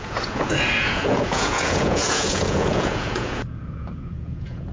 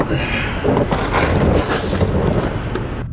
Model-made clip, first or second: first